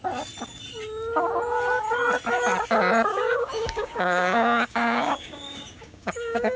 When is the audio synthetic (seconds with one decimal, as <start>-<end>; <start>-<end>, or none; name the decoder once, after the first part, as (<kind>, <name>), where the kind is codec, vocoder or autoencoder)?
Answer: 3.1-6.6 (codec, DAC)